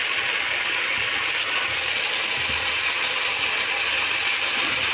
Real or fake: fake